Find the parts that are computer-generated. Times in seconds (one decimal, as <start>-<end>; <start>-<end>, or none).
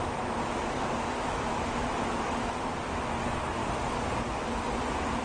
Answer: 0.0-3.6